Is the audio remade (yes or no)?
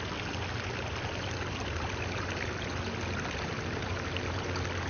no